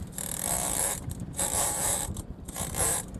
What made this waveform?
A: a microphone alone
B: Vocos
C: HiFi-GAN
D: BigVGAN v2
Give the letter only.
D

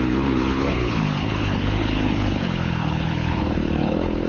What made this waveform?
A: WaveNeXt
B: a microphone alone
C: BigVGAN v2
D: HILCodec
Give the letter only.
D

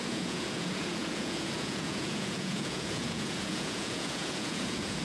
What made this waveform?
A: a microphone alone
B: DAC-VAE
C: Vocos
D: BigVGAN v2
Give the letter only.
C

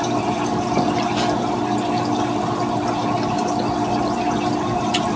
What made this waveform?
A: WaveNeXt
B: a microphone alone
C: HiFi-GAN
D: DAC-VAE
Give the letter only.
B